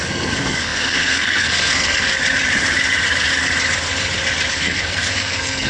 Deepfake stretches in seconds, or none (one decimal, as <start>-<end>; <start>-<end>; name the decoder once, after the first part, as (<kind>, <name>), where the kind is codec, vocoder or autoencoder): 0.0-2.1 (codec, SNAC); 4.5-5.7